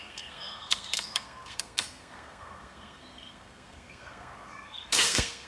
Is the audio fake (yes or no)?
yes